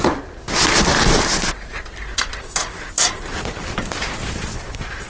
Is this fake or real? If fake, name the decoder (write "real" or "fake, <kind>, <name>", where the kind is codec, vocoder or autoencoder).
real